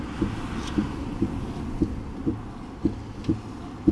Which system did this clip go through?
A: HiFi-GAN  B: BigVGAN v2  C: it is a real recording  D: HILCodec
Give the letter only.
C